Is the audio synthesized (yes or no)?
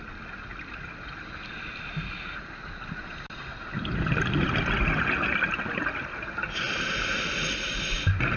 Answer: no